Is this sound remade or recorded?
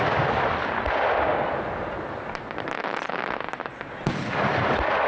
recorded